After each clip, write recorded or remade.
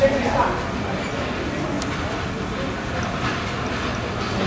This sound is recorded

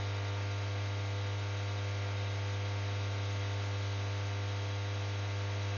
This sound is recorded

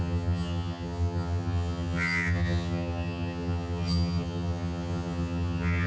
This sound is remade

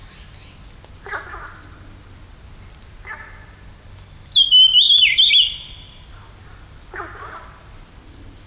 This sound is recorded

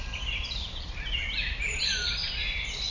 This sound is recorded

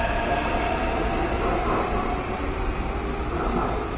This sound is recorded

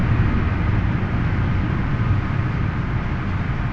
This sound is recorded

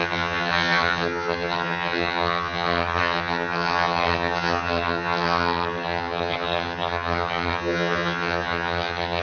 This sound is remade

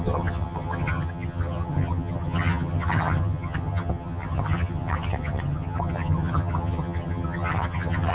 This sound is remade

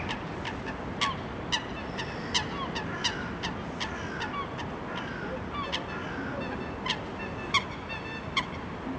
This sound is recorded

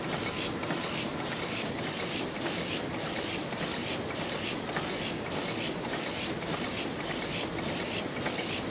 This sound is recorded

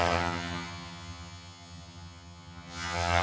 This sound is remade